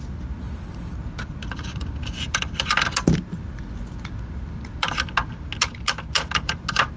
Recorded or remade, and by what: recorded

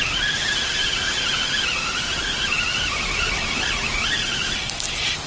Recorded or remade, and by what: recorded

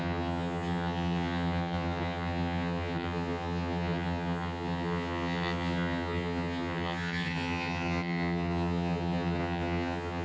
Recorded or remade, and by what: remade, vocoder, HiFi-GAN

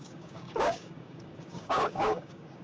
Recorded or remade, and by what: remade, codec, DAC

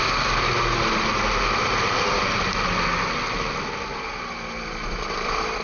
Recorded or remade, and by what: recorded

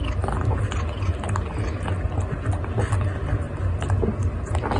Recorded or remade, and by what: recorded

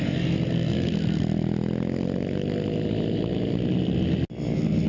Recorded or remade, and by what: recorded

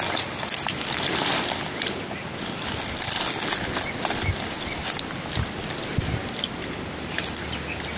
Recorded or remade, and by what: recorded